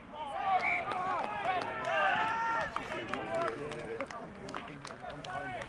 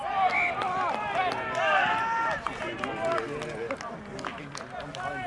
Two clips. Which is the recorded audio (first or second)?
second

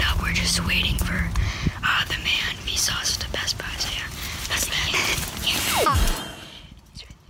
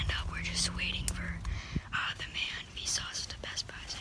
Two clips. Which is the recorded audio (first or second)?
second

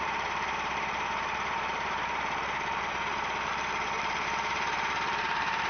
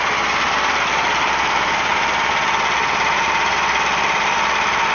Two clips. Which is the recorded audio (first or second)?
second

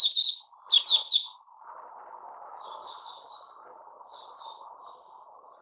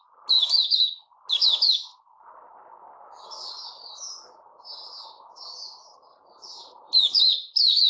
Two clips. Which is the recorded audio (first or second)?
second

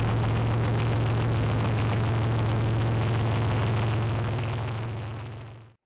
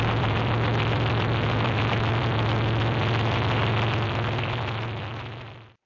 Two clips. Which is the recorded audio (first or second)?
first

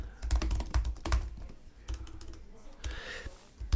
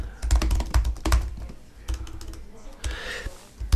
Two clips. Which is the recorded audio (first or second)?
second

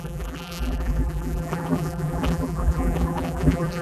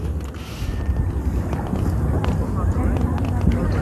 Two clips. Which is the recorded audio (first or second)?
second